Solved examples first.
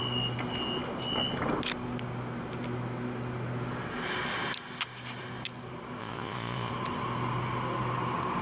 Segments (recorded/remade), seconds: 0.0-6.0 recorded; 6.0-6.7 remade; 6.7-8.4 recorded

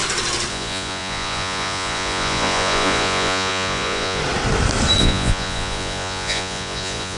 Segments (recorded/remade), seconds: 0.0-0.5 recorded; 0.5-4.2 remade; 4.2-5.0 recorded; 5.0-7.2 remade

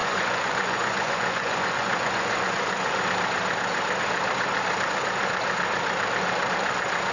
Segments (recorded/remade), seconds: 0.0-3.0 remade; 3.0-7.1 recorded

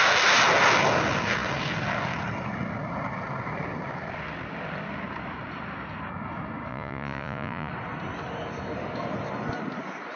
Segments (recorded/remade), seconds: 0.0-6.7 recorded; 6.7-7.7 remade; 7.7-10.2 recorded

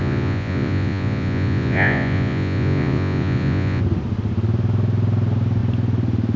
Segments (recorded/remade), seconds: 0.0-3.8 remade; 3.8-6.4 recorded

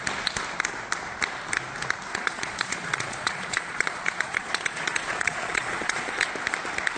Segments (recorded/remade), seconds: 0.0-2.1 recorded; 2.1-6.3 remade; 6.3-7.0 recorded

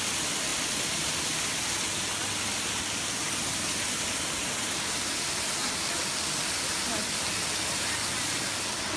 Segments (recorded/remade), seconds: 0.0-9.0 recorded